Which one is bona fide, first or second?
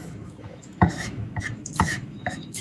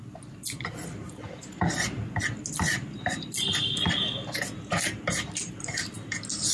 second